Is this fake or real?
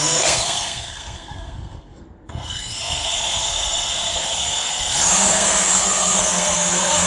fake